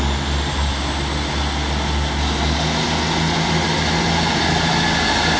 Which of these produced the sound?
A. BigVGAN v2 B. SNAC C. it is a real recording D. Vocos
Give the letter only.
C